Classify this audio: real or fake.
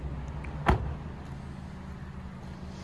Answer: real